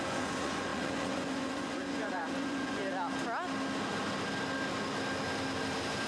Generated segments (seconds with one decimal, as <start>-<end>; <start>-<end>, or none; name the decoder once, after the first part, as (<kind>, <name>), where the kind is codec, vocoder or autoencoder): 0.0-2.8 (vocoder, Vocos)